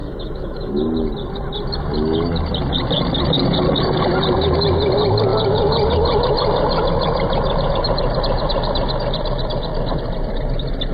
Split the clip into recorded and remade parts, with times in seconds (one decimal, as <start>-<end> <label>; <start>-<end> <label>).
0.0-0.7 remade; 0.7-10.9 recorded